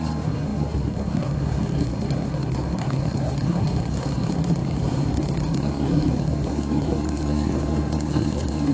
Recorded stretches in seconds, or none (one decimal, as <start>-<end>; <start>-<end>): none

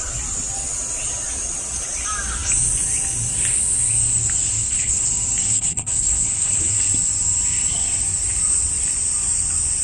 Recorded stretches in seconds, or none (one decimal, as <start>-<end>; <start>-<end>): 0.0-4.6; 5.1-5.5; 6.8-9.8

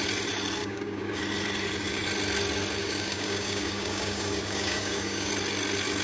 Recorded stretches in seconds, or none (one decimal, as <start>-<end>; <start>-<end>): 0.0-0.6; 1.2-2.8; 5.3-6.0

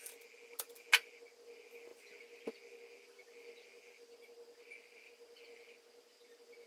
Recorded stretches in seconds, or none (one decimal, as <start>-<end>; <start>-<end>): 0.0-6.7

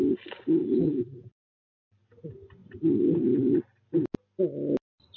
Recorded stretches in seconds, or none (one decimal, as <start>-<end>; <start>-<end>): 0.0-0.6; 2.0-5.2

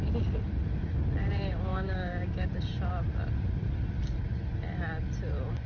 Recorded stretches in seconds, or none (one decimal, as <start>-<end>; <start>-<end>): 0.0-1.7; 2.5-5.7

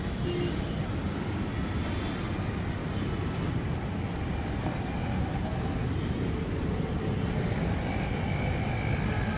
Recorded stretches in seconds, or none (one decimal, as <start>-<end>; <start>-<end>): 0.0-9.4

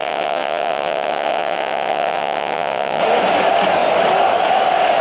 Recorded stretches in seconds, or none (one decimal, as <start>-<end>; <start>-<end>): 3.0-5.0